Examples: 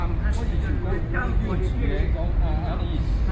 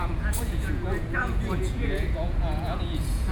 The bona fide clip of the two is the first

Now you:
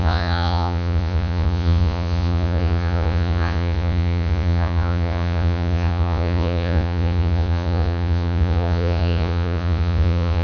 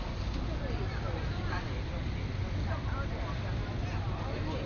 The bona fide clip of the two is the second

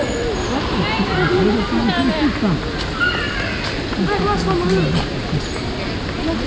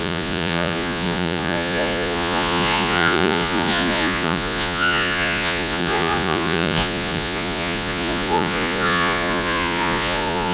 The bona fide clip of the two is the first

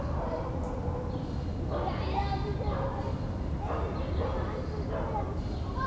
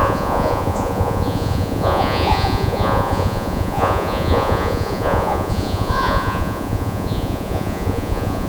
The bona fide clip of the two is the first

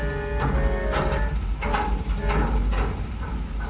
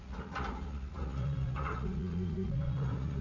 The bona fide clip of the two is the first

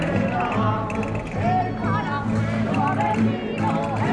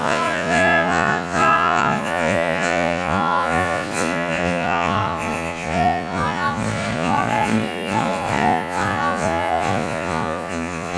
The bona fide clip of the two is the first